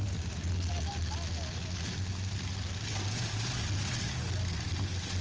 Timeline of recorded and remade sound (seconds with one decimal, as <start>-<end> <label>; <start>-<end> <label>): 0.0-5.2 recorded